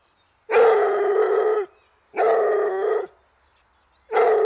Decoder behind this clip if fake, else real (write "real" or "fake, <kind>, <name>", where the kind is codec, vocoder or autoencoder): real